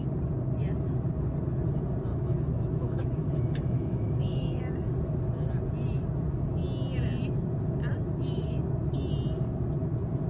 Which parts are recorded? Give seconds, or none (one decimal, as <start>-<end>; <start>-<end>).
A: 0.0-2.1; 4.6-10.3